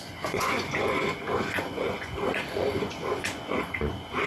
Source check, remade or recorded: remade